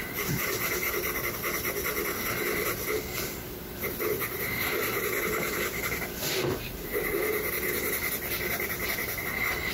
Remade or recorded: remade